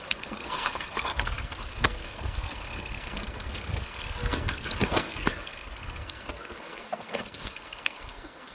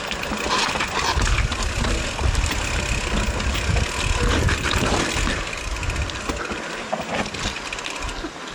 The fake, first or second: first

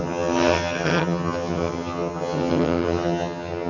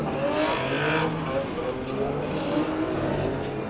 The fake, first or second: first